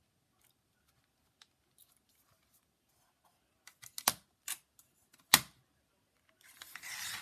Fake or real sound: real